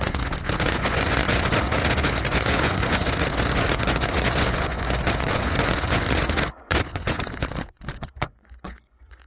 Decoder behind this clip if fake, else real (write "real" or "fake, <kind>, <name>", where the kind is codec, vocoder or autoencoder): fake, vocoder, Vocos